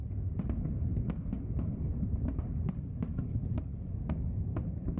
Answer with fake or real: fake